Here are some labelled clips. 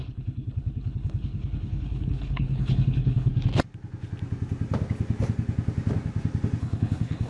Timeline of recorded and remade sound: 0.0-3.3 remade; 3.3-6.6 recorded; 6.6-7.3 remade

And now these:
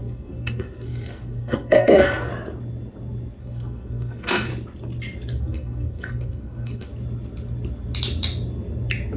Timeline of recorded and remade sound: 0.0-2.3 remade; 2.3-3.4 recorded; 3.4-4.5 remade; 4.5-5.4 recorded; 5.4-6.9 remade; 6.9-9.2 recorded

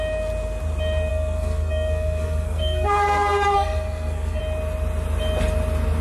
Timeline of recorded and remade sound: 0.0-1.1 recorded; 1.1-4.4 remade; 4.4-6.0 recorded

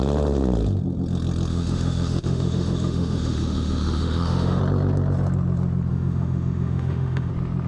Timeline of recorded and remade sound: 0.0-1.5 recorded; 1.5-4.6 remade; 4.6-5.9 recorded; 5.9-7.3 remade; 7.3-7.7 recorded

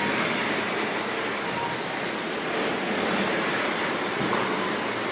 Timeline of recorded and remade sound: 0.0-2.7 recorded; 2.7-4.1 remade; 4.1-5.1 recorded

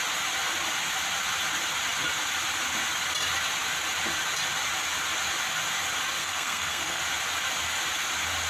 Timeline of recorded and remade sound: 0.0-6.2 recorded; 6.2-7.0 remade; 7.0-8.5 recorded